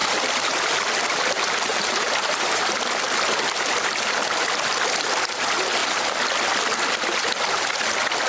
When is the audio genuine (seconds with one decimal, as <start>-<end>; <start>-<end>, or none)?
0.0-1.7; 2.6-8.3